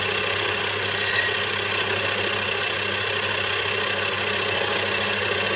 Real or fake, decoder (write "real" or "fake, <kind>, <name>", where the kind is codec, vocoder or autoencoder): real